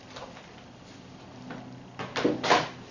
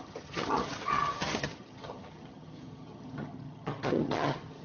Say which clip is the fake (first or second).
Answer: second